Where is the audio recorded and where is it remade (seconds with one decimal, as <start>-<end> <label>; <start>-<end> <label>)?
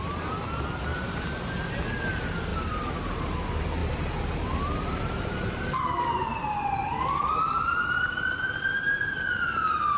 0.0-0.9 recorded; 0.9-1.8 remade; 1.8-2.5 recorded; 2.5-3.1 remade; 3.1-3.8 recorded; 3.8-5.6 remade; 5.6-10.0 recorded